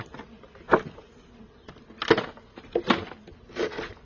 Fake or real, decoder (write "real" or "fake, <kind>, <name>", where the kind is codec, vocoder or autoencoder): real